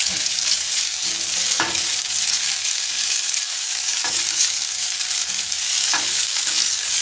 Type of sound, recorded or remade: remade